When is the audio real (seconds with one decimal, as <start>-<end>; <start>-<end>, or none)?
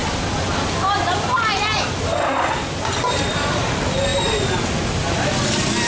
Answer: 0.0-5.9